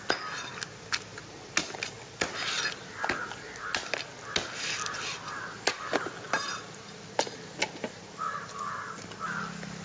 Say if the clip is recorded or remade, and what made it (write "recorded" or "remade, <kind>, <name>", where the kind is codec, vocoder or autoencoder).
recorded